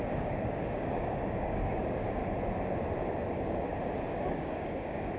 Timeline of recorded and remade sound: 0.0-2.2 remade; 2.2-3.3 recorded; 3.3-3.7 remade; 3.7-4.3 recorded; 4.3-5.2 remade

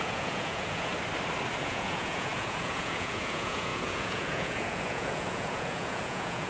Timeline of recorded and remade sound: 0.0-0.9 remade; 0.9-1.6 recorded; 1.6-6.5 remade

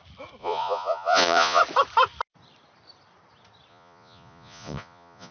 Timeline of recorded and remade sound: 0.0-0.4 recorded; 0.4-1.6 remade; 1.6-3.7 recorded; 3.7-5.3 remade

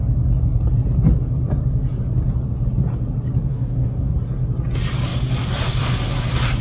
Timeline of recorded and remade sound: 0.0-3.5 recorded; 3.5-4.1 remade; 4.1-6.6 recorded

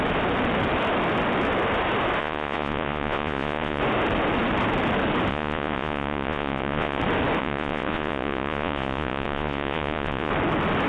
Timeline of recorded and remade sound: 0.0-2.2 recorded; 2.2-3.8 remade; 3.8-5.3 recorded; 5.3-7.0 remade; 7.0-7.4 recorded; 7.4-10.3 remade; 10.3-10.9 recorded

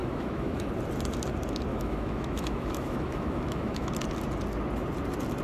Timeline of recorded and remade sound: 0.0-0.7 remade; 0.7-1.7 recorded; 1.7-3.9 remade; 3.9-5.4 recorded